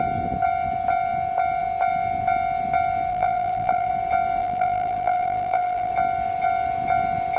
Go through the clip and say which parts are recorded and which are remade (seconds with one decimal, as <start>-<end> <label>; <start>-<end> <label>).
0.0-3.1 recorded; 3.1-3.9 remade; 3.9-4.4 recorded; 4.4-5.9 remade; 5.9-7.4 recorded